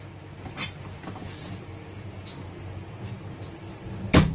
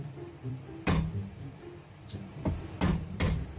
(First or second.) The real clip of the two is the first